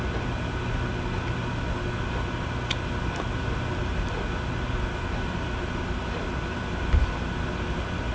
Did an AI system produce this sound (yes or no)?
no